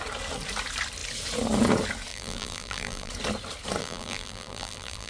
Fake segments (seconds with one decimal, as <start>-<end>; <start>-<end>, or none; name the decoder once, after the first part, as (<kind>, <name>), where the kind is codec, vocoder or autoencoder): 2.1-3.1 (vocoder, BigVGAN v2); 3.8-5.1